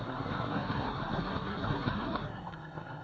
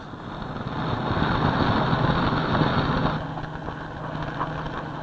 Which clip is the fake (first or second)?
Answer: first